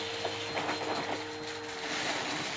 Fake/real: real